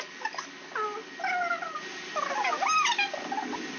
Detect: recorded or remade recorded